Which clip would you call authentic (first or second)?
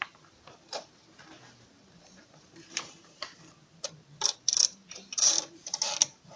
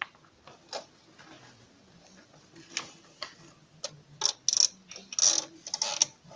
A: second